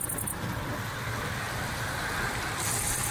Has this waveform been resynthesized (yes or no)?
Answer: no